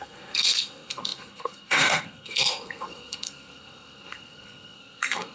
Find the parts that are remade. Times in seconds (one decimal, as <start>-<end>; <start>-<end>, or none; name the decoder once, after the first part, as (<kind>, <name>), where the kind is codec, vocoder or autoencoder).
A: 0.0-5.3 (codec, SNAC)